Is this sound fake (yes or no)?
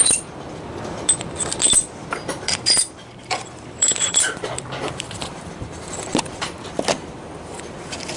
yes